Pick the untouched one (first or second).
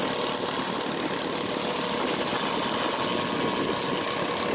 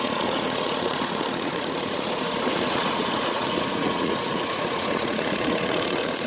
first